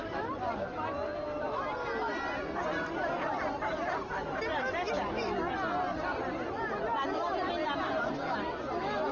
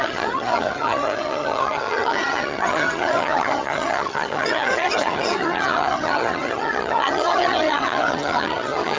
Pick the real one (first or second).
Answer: first